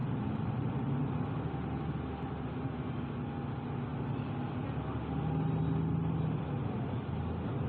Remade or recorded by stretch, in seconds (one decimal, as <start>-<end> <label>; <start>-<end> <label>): 0.0-1.1 remade; 1.1-7.7 recorded